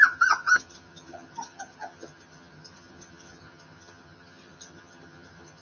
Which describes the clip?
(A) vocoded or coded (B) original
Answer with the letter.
A